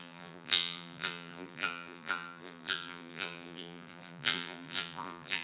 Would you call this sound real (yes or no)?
no